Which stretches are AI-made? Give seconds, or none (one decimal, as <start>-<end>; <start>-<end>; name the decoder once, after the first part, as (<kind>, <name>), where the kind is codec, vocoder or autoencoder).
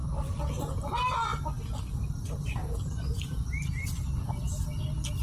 none